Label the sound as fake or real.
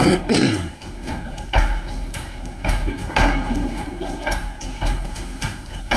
fake